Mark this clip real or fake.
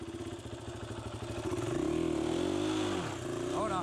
real